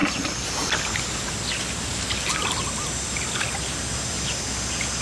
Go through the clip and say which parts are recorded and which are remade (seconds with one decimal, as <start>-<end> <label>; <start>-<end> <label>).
0.0-5.0 recorded